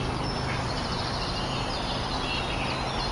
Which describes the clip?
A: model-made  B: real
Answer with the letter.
B